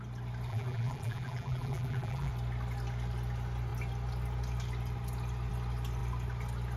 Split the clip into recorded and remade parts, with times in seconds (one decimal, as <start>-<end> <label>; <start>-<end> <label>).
0.0-0.5 recorded; 0.5-2.3 remade; 2.3-6.8 recorded